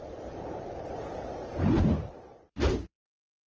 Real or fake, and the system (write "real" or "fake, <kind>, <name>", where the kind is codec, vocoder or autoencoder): fake, vocoder, BigVGAN v2